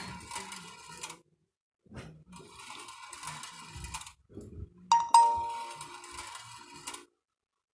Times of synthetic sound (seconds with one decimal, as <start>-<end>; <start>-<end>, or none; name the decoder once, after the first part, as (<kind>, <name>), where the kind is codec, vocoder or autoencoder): none